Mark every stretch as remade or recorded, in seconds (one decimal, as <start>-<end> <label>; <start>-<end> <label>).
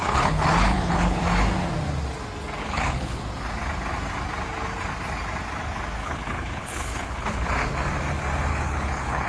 0.0-1.2 remade; 1.2-2.6 recorded; 2.6-3.2 remade; 3.2-6.0 recorded; 6.0-7.5 remade; 7.5-8.5 recorded; 8.5-9.3 remade